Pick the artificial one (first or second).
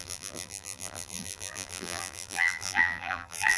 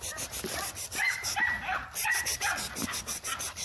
first